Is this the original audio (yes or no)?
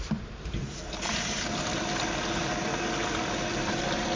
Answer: yes